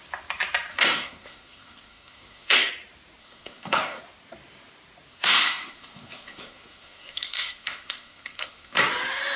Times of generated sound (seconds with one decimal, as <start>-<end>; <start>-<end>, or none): 0.7-2.7; 3.2-4.0; 5.1-8.8